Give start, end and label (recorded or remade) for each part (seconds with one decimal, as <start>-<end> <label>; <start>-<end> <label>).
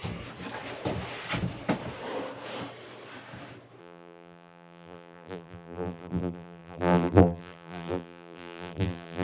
0.0-3.8 recorded; 3.8-9.2 remade